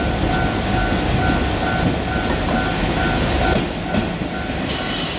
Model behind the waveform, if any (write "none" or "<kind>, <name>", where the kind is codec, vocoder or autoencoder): none